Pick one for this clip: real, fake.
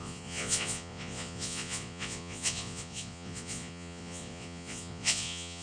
fake